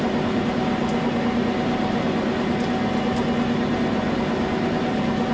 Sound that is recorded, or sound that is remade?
recorded